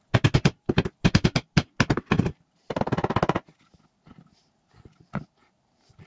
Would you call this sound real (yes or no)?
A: yes